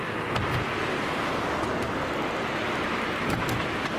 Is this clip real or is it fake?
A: real